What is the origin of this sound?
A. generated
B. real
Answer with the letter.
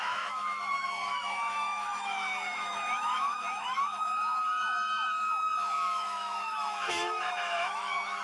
A